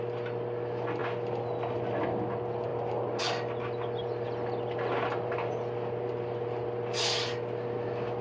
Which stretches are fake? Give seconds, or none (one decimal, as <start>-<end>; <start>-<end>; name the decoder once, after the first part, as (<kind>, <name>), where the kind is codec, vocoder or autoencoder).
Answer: none